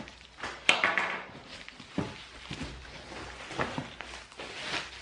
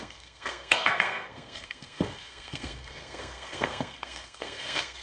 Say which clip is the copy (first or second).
second